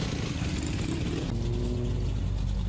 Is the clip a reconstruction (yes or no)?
no